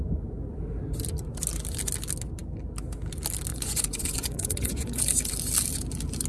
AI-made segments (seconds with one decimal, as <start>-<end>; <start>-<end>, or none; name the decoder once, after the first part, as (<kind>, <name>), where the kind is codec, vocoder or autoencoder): 3.5-5.0 (vocoder, Vocos)